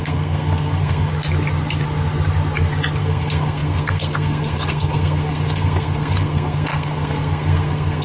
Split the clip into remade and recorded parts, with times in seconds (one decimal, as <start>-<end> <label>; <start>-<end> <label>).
0.0-1.1 remade; 1.1-3.0 recorded; 3.0-8.0 remade